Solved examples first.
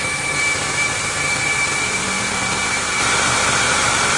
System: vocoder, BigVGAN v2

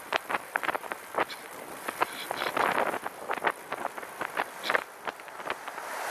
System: vocoder, BigVGAN v2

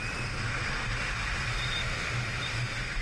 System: none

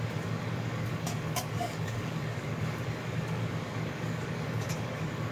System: codec, DAC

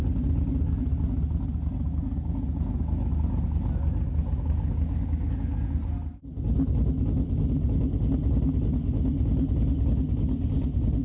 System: none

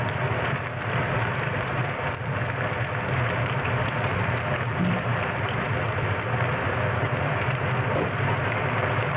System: vocoder, BigVGAN v2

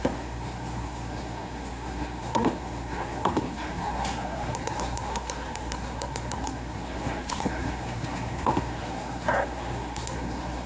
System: codec, SNAC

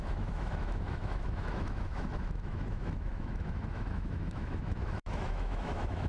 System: autoencoder, DAC-VAE